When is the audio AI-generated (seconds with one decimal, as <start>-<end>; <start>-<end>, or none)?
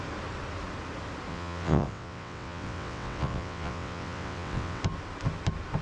1.3-4.8